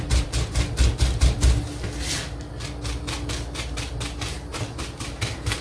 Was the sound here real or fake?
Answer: real